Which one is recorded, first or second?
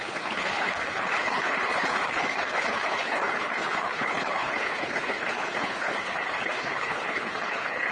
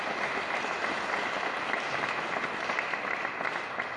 second